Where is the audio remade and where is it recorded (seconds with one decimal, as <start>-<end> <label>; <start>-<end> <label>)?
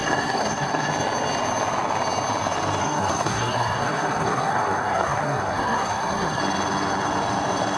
0.0-0.9 remade; 0.9-2.8 recorded; 2.8-6.4 remade; 6.4-7.8 recorded